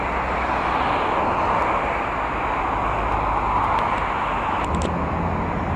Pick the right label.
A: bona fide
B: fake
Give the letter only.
A